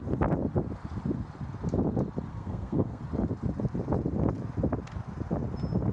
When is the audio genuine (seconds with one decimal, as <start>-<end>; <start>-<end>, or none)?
0.0-2.3; 3.0-5.9